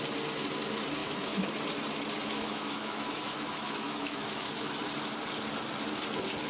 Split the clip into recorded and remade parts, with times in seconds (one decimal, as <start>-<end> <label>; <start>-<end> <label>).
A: 0.0-1.0 recorded; 1.0-1.5 remade; 1.5-2.2 recorded; 2.2-4.8 remade; 4.8-6.5 recorded